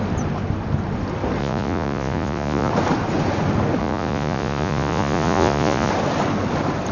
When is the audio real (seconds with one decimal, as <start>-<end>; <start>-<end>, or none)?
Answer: 0.0-1.4; 2.7-3.8; 5.9-6.9

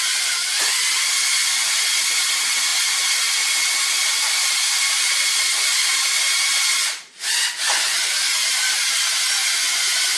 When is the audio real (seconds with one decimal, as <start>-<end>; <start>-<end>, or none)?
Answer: 0.0-7.4; 8.2-9.4